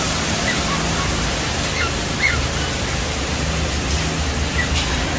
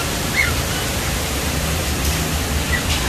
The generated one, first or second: second